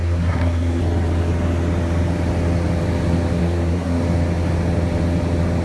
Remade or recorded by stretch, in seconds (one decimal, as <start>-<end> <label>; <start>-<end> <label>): 0.0-0.8 remade; 0.8-3.4 recorded; 3.4-4.0 remade; 4.0-5.6 recorded